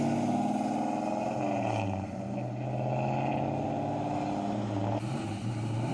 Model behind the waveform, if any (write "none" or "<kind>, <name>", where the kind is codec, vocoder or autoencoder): none